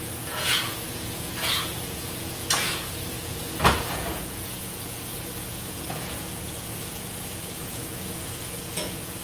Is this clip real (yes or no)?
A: no